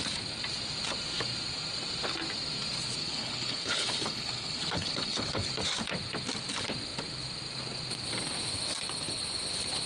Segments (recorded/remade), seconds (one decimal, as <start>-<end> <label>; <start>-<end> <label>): 0.0-3.0 recorded; 3.0-5.5 remade; 5.5-9.9 recorded